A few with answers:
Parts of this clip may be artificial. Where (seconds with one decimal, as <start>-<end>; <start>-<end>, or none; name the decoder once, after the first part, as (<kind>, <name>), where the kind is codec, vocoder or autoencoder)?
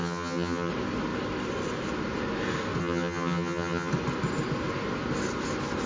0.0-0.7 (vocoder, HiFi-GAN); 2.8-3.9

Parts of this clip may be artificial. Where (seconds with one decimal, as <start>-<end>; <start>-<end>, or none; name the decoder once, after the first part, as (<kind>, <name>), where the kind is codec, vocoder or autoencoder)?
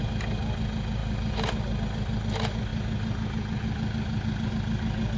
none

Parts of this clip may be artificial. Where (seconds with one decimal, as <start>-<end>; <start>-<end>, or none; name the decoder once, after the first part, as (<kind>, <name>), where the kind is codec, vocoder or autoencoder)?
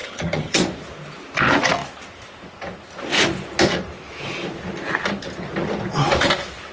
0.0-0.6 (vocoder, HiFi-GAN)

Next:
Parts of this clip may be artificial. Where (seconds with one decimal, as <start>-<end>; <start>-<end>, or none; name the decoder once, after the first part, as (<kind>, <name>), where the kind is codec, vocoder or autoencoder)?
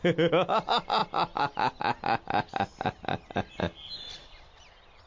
none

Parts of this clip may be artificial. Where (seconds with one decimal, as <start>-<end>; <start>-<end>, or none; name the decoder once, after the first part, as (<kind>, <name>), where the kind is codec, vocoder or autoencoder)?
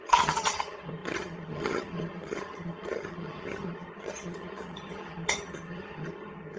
0.0-6.6 (vocoder, HiFi-GAN)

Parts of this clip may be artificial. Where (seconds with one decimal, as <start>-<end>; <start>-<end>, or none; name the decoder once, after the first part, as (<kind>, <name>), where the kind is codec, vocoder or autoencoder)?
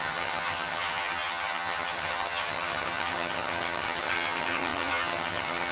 0.0-5.7 (vocoder, HiFi-GAN)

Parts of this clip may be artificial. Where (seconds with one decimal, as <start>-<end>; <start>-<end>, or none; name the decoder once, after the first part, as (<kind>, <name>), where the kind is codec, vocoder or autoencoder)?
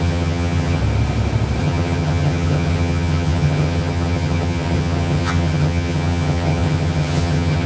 0.0-0.8 (vocoder, HiFi-GAN); 1.6-7.7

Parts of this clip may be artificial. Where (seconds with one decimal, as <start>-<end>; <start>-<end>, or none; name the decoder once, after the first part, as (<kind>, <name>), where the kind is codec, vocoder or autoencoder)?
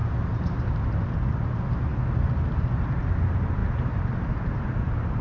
none